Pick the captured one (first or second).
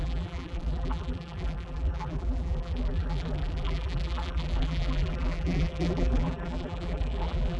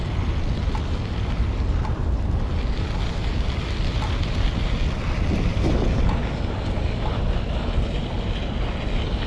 second